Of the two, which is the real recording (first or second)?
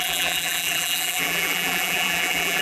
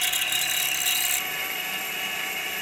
second